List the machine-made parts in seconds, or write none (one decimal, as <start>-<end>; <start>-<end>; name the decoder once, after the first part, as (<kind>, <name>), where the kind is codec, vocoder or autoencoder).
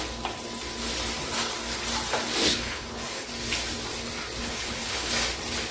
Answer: 2.4-3.3 (codec, HILCodec); 4.4-5.1